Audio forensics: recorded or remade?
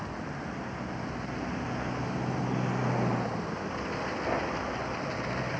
recorded